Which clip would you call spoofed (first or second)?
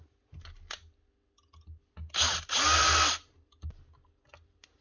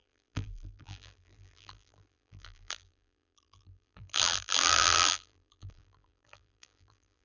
second